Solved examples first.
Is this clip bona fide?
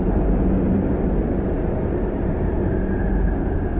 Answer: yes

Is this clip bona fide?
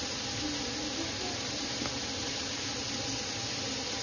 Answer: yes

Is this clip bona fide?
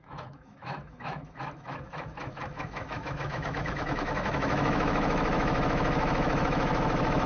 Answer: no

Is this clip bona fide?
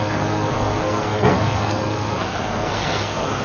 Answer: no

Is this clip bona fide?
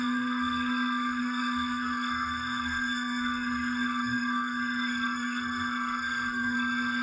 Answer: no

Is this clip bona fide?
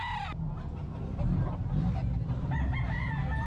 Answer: yes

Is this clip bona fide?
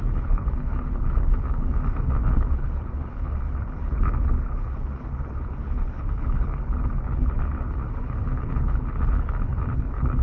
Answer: no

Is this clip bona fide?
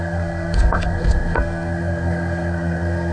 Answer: no